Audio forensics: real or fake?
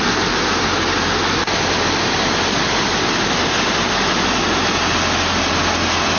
real